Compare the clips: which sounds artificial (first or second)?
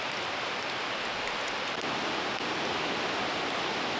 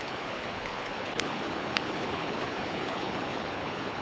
second